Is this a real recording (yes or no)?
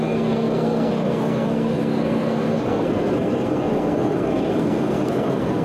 no